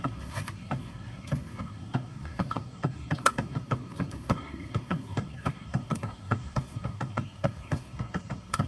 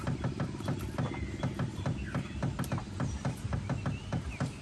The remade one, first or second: first